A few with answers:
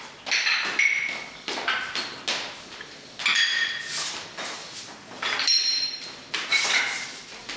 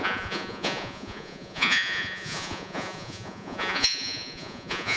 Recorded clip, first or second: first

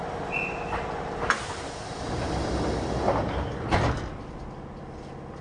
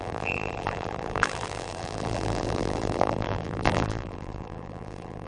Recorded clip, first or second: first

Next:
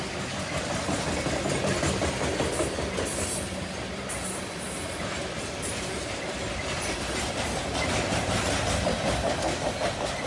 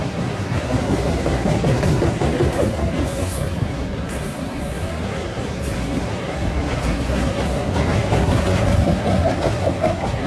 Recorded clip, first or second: first